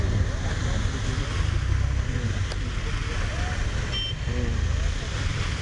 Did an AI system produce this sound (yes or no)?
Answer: no